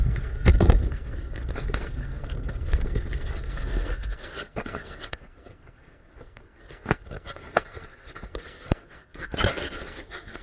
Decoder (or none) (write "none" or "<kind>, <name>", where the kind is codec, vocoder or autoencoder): codec, SNAC